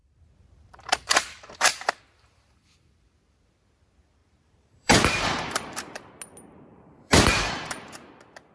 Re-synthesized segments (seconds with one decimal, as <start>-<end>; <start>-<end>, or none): 0.0-1.9; 4.2-6.1; 6.7-8.1